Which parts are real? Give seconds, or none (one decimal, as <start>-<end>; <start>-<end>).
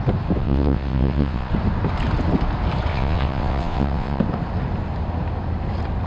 0.0-0.4; 1.5-2.9; 4.2-6.1